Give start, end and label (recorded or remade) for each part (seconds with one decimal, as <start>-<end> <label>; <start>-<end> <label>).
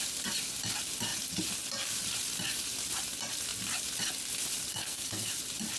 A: 0.0-4.7 recorded; 4.7-5.3 remade; 5.3-5.8 recorded